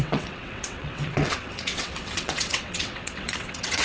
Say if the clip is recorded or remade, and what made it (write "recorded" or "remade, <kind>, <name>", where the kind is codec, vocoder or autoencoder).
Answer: remade, vocoder, WaveNeXt